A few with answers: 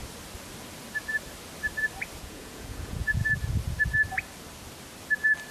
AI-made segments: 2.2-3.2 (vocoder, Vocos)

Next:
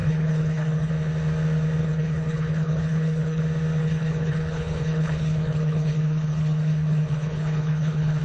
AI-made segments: 0.0-0.9 (codec, HILCodec); 1.8-3.4; 3.8-8.2

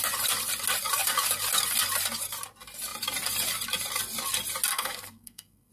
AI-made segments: 4.7-5.7 (codec, SNAC)

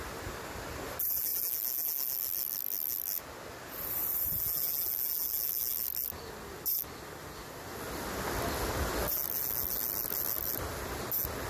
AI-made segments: none

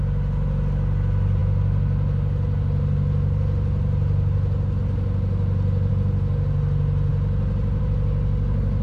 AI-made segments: none

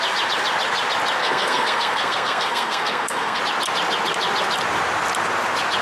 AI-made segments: 1.2-3.4 (codec, SNAC)

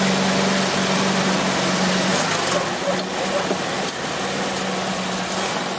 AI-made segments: none

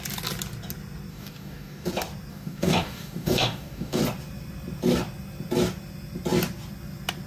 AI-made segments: 1.1-1.9 (codec, DAC); 2.3-4.0